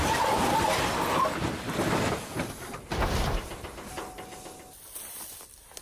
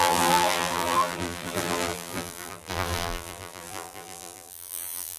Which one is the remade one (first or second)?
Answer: second